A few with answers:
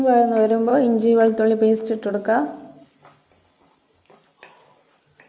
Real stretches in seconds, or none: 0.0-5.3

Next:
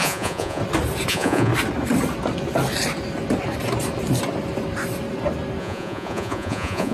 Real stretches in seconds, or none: 0.6-1.1; 1.5-5.6

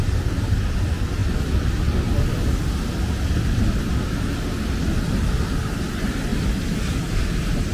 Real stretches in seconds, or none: 0.0-7.7

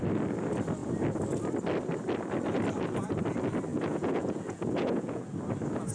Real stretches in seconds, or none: 0.0-3.7; 5.2-5.9

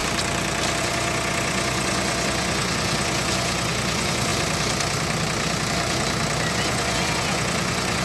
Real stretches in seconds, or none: 0.0-0.8; 4.3-6.5

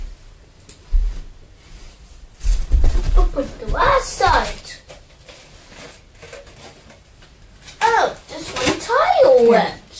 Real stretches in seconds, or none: 0.0-1.7; 3.0-10.0